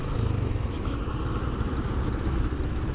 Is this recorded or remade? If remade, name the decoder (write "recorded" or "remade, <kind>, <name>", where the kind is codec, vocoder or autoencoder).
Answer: recorded